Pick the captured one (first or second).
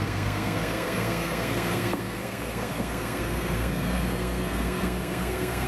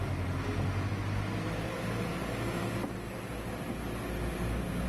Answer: second